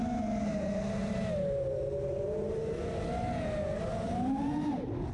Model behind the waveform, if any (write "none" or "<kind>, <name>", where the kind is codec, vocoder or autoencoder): none